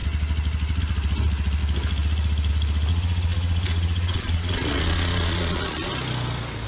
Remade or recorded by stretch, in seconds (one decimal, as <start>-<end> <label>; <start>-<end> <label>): 0.0-2.9 recorded; 2.9-5.9 remade; 5.9-6.7 recorded